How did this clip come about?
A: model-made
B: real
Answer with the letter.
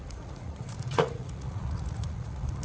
A